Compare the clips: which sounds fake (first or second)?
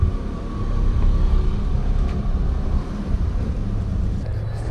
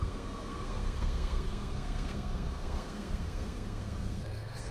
second